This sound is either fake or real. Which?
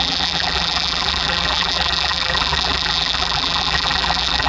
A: fake